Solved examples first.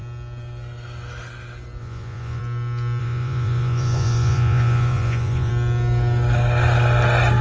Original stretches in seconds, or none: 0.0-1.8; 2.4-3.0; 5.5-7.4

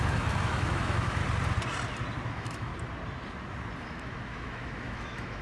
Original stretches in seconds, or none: 1.2-2.3; 2.7-3.8

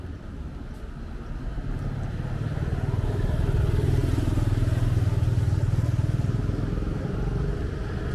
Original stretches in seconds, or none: 0.0-8.1

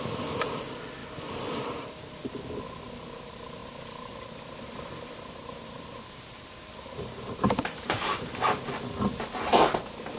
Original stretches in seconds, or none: 0.0-1.0; 2.6-3.6; 8.3-10.2

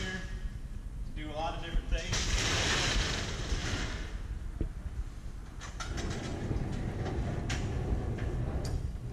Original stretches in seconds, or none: 0.0-9.1

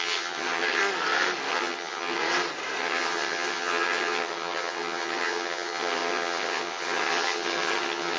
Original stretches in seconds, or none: 0.8-1.5; 2.2-2.8